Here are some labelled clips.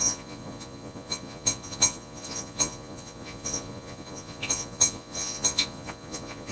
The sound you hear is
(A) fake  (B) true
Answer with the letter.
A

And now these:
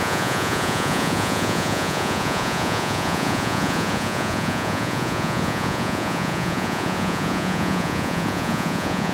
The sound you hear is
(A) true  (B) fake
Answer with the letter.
B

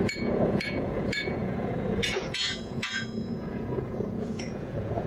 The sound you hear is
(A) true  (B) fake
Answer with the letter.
B